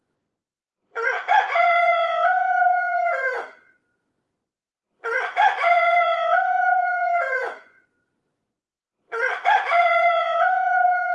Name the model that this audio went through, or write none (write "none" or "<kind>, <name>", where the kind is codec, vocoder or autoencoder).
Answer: vocoder, Vocos